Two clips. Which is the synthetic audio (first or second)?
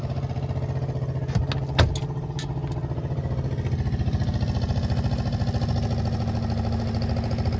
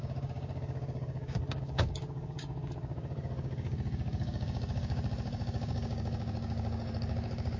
second